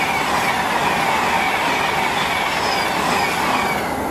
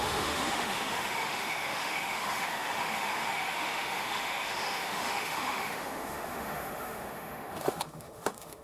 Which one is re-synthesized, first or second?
second